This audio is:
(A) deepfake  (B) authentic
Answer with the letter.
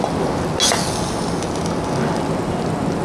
B